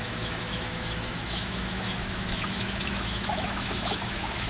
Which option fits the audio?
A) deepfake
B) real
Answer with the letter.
A